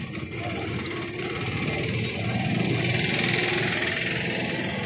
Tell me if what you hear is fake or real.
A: real